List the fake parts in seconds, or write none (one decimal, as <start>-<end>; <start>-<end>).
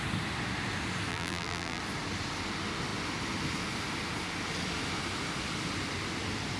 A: 1.1-1.8